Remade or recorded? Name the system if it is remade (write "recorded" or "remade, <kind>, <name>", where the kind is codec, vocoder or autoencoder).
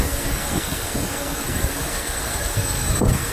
remade, codec, SNAC